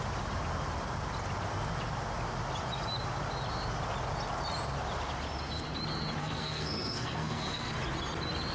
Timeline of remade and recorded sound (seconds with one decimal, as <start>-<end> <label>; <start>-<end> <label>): 0.0-6.2 recorded; 6.2-7.7 remade; 7.7-8.5 recorded